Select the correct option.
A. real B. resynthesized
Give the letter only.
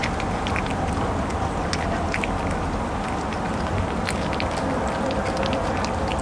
A